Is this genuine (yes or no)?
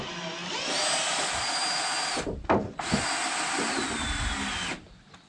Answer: yes